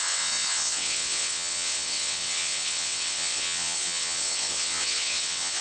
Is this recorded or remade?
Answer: remade